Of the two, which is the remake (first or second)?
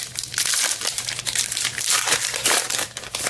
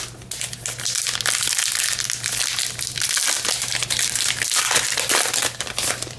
first